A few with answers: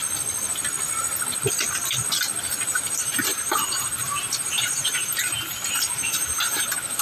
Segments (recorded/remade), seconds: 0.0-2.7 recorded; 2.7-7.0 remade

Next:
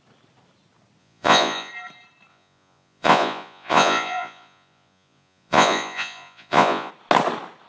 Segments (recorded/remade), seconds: 0.0-1.0 recorded; 1.0-1.7 remade; 1.7-2.3 recorded; 2.3-6.9 remade; 6.9-7.7 recorded

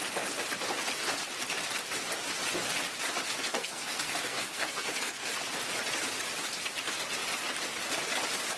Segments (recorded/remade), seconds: 0.0-3.5 recorded; 3.5-5.3 remade; 5.3-8.6 recorded